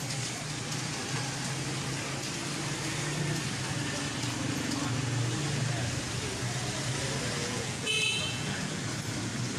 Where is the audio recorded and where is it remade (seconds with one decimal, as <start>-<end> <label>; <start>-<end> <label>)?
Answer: 0.0-7.4 recorded; 7.4-8.8 remade; 8.8-9.6 recorded